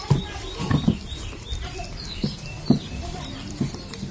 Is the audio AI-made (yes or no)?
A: yes